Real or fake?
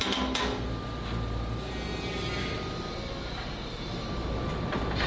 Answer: real